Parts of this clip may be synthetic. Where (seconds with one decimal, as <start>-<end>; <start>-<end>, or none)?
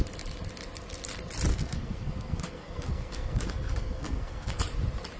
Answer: 1.5-4.6